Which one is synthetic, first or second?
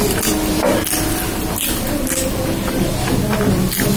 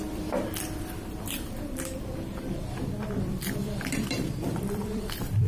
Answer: second